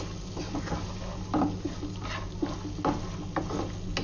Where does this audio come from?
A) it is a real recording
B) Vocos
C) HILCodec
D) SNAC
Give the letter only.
A